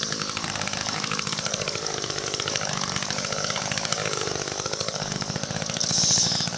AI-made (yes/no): yes